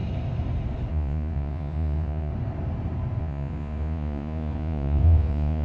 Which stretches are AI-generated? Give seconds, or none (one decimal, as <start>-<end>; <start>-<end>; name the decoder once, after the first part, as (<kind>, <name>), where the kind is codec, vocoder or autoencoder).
0.9-2.3 (vocoder, Vocos); 3.2-5.6